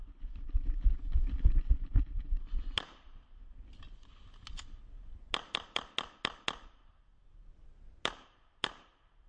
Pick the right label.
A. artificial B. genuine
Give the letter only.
B